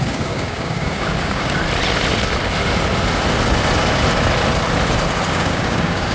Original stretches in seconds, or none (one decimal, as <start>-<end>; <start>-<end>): 1.6-5.3